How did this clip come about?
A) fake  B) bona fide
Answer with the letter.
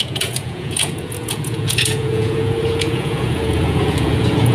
A